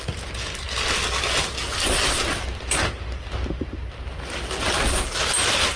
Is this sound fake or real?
real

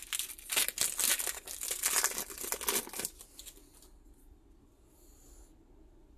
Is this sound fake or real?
real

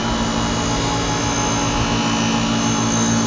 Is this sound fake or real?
real